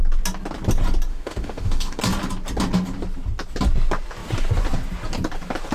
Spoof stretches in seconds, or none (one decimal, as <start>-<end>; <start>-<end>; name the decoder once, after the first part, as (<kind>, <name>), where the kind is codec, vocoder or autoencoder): 1.1-2.0 (autoencoder, DAC-VAE)